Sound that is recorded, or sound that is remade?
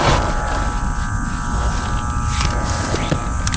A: recorded